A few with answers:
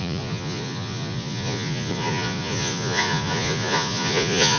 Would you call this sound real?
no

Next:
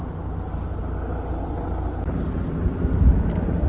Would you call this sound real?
yes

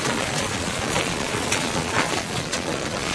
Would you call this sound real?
no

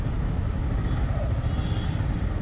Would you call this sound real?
yes